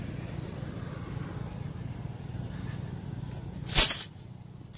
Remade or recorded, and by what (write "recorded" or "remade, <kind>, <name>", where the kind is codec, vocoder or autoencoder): recorded